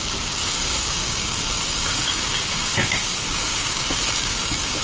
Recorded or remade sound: remade